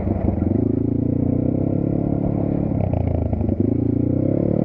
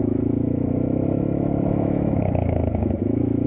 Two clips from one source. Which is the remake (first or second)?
second